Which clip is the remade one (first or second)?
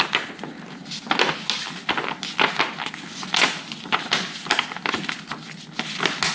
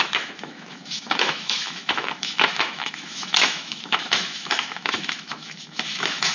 second